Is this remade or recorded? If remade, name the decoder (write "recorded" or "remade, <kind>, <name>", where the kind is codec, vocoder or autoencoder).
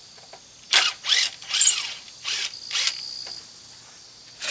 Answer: recorded